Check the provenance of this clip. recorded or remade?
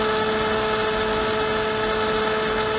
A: recorded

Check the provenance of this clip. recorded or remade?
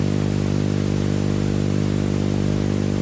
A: recorded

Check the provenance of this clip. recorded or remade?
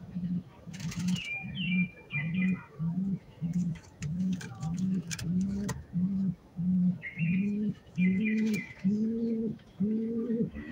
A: remade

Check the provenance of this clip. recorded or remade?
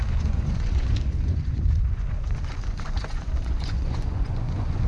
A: remade